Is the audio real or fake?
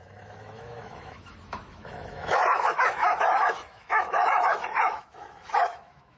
fake